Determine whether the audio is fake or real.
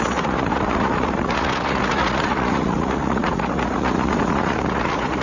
fake